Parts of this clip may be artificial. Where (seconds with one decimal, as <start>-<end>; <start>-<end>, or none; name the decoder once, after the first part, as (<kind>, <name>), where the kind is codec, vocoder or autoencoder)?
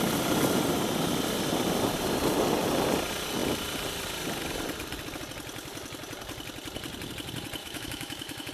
7.6-8.5 (autoencoder, DAC-VAE)